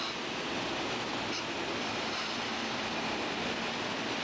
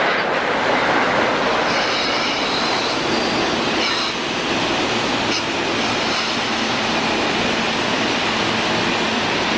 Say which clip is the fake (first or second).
first